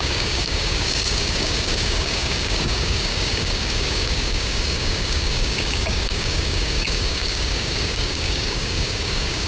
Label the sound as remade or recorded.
remade